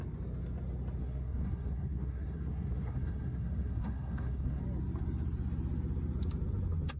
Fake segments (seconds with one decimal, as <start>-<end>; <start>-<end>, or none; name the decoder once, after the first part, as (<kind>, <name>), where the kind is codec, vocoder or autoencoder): 1.0-4.6 (codec, SNAC)